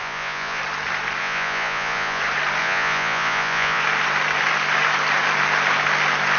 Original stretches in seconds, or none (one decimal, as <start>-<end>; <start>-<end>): 0.6-1.2; 2.2-2.6; 3.8-6.4